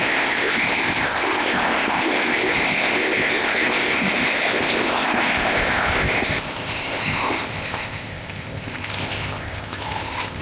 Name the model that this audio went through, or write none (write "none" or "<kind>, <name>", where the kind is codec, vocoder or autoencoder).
codec, ZipCodec